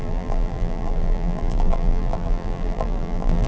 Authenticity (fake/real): fake